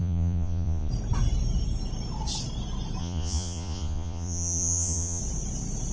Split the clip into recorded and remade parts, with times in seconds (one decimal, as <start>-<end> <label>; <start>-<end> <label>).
0.0-0.9 remade; 0.9-3.0 recorded; 3.0-5.2 remade; 5.2-5.9 recorded